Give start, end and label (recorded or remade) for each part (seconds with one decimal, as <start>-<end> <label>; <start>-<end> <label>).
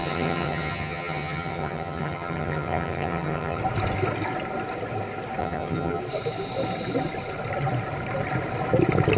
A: 0.0-3.6 remade; 3.6-5.4 recorded; 5.4-6.0 remade; 6.0-9.2 recorded